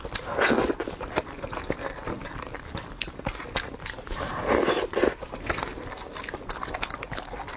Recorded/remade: recorded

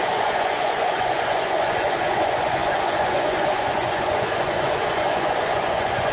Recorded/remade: remade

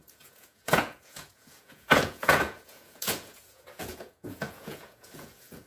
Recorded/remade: remade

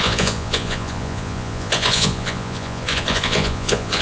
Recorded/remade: remade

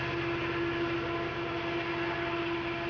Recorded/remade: recorded